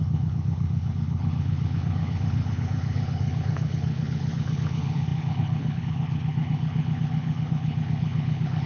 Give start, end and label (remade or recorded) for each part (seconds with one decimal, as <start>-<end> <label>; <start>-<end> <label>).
0.0-8.7 remade